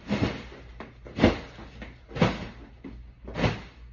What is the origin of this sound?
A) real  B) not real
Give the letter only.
A